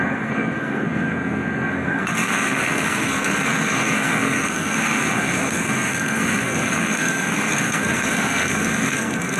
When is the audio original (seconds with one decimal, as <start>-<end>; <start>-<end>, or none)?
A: none